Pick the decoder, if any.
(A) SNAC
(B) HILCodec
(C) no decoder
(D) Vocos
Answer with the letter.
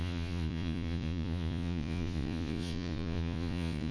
D